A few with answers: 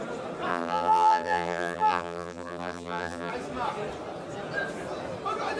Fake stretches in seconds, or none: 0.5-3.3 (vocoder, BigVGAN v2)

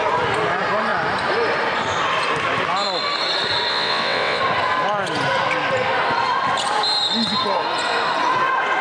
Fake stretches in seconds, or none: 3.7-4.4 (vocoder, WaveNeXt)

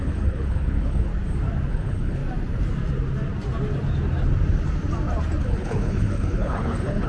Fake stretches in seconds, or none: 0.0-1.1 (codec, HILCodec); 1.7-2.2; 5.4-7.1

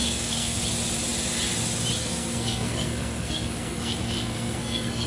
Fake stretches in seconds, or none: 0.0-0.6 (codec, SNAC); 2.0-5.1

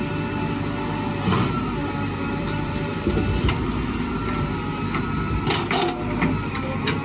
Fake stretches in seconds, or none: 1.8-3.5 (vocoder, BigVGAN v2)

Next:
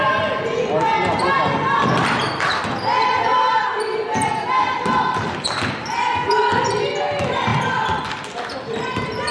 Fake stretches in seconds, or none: none

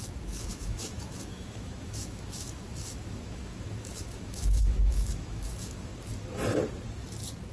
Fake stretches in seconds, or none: 0.0-5.9 (autoencoder, DAC-VAE)